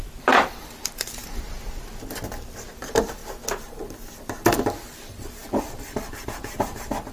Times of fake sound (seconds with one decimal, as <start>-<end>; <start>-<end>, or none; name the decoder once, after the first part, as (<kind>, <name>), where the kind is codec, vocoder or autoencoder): 0.0-1.2 (vocoder, BigVGAN v2); 2.6-3.2; 4.1-7.1

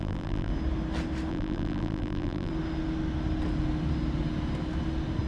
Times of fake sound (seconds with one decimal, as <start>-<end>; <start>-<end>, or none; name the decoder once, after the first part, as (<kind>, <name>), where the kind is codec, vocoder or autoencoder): 0.0-0.5 (vocoder, BigVGAN v2); 1.3-2.5

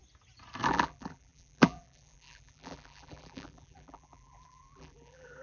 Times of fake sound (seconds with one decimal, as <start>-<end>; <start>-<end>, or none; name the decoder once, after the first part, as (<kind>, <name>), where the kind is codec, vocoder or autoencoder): 0.7-5.4 (vocoder, BigVGAN v2)

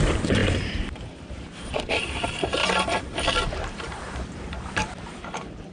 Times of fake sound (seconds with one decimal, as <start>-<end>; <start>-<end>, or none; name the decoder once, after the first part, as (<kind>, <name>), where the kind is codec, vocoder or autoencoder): 0.0-2.6 (vocoder, BigVGAN v2); 3.4-5.7

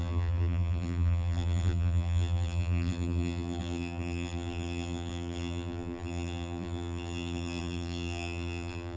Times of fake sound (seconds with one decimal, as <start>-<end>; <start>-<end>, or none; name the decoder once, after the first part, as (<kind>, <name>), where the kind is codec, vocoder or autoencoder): 0.0-9.0 (vocoder, BigVGAN v2)

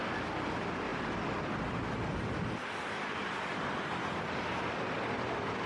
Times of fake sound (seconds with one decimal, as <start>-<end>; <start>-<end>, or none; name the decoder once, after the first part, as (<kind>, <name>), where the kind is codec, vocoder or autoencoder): 0.9-4.3 (vocoder, BigVGAN v2)

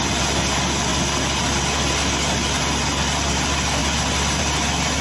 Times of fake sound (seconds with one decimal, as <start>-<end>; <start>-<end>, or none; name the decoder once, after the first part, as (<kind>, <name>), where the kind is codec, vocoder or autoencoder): none

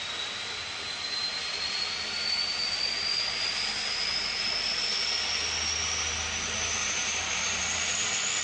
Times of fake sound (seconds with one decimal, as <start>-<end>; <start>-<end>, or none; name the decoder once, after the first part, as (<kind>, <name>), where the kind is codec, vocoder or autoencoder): 6.8-7.6 (vocoder, BigVGAN v2)